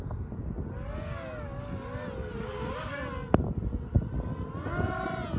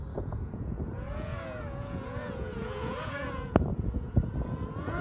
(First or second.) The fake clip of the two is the second